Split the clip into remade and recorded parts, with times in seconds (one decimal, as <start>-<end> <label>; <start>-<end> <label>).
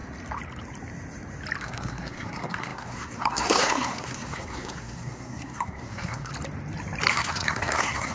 0.0-1.6 recorded; 1.6-6.3 remade; 6.3-7.1 recorded; 7.1-8.1 remade